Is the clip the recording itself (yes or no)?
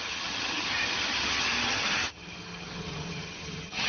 no